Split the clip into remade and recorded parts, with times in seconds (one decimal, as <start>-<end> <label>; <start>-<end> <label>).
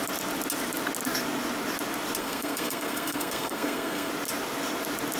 0.0-2.2 recorded; 2.2-4.1 remade; 4.1-5.2 recorded